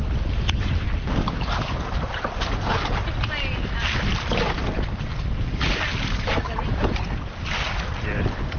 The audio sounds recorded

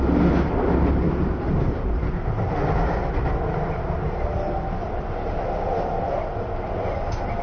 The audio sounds recorded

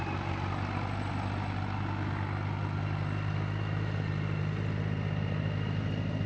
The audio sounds recorded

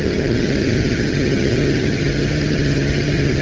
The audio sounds remade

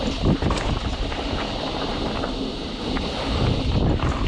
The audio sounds recorded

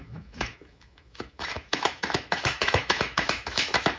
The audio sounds remade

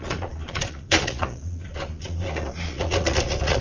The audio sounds remade